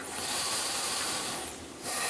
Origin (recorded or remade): remade